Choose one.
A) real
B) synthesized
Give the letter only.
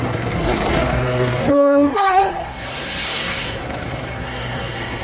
B